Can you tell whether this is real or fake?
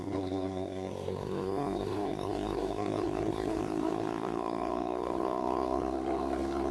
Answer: fake